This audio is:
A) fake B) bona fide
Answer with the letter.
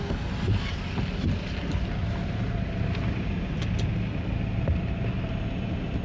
B